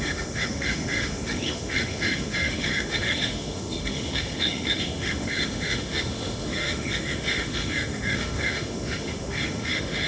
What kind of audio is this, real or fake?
fake